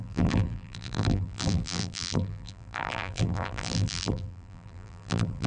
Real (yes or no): no